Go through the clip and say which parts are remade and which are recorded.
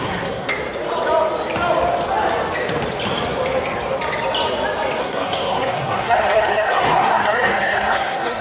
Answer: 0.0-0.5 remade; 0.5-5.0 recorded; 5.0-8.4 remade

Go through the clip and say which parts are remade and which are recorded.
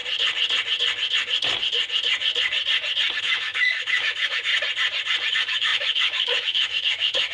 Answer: 0.0-3.2 recorded; 3.2-4.5 remade; 4.5-5.3 recorded; 5.3-7.3 remade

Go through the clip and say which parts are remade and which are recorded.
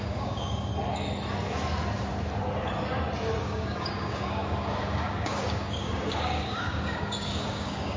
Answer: 0.0-0.7 remade; 0.7-3.4 recorded; 3.4-8.0 remade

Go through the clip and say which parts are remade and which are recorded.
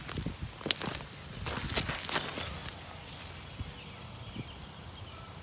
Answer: 0.0-5.4 recorded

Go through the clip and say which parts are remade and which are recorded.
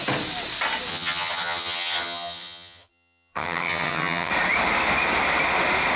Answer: 0.0-0.9 recorded; 0.9-4.3 remade; 4.3-6.0 recorded